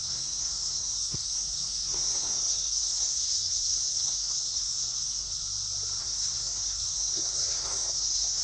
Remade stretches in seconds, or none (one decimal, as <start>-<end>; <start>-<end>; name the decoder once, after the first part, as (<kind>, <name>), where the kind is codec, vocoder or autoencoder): 0.0-5.4 (codec, SNAC); 6.0-8.4